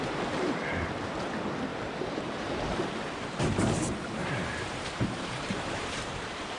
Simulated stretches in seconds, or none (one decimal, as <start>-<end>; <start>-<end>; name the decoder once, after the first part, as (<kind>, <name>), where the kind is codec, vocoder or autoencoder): 1.7-2.6 (vocoder, BigVGAN v2); 4.2-6.6